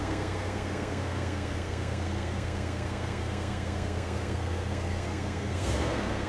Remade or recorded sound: remade